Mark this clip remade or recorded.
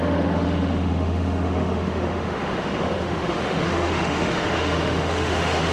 remade